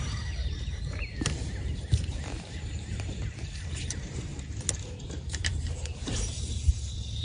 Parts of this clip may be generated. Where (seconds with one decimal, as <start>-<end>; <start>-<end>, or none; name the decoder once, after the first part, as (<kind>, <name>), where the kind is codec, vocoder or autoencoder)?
0.0-4.3 (vocoder, BigVGAN v2); 5.0-7.2